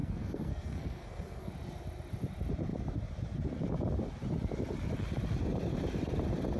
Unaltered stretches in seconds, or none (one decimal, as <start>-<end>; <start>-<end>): 1.5-6.6

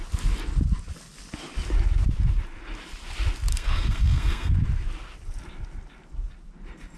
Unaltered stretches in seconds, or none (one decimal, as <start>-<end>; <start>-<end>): 0.0-3.5; 4.5-7.0

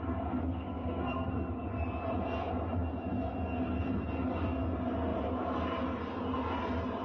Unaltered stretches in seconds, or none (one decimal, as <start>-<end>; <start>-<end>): 0.0-0.4; 1.3-7.0

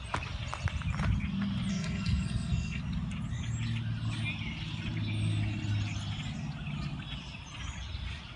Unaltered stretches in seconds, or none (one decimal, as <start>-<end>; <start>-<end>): 0.0-1.7; 2.8-8.4